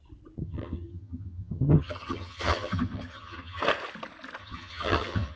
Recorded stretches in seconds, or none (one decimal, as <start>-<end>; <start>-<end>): 0.0-0.4; 3.6-4.4